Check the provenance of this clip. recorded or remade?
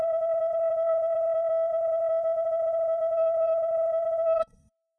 remade